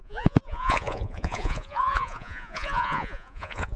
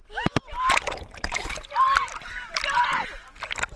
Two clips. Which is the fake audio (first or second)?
first